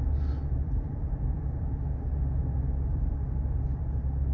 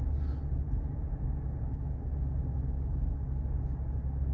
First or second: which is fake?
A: first